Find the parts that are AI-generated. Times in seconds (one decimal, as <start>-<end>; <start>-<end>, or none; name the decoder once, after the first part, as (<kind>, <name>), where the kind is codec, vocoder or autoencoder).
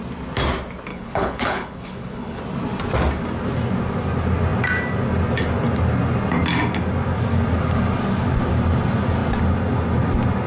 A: 0.9-2.4 (codec, HILCodec)